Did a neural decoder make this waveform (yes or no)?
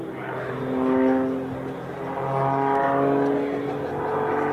no